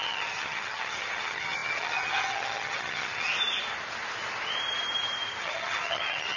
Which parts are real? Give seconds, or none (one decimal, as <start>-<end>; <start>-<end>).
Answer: 3.3-5.4